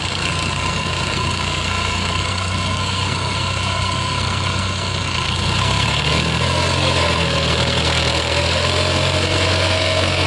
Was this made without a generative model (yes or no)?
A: no